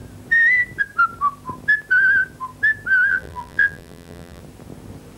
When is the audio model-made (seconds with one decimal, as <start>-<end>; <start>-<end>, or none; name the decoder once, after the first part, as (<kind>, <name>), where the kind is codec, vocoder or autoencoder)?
3.1-4.4 (vocoder, BigVGAN v2)